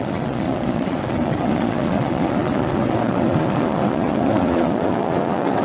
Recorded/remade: remade